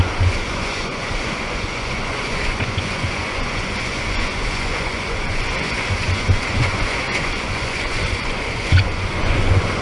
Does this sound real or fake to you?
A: fake